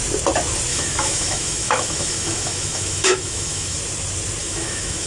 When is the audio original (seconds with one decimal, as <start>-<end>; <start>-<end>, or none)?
0.0-0.7; 3.8-4.4